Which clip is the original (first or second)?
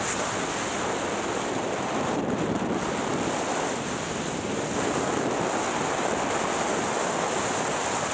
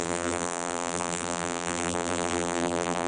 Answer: first